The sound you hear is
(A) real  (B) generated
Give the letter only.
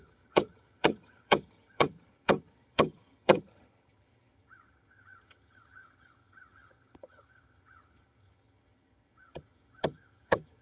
B